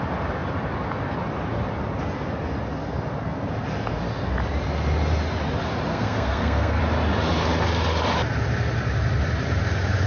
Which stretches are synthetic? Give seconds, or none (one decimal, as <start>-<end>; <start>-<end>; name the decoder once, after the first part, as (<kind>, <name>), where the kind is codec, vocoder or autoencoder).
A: 5.9-6.8 (codec, SNAC)